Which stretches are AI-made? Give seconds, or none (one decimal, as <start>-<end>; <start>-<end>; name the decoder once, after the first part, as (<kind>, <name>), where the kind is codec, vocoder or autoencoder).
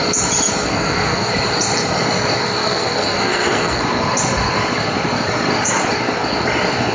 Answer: 0.6-1.3 (codec, SNAC); 2.6-3.8